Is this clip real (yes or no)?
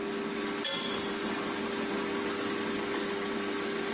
yes